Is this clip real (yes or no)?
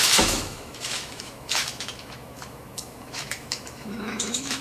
no